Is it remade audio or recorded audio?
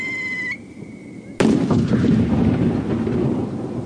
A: recorded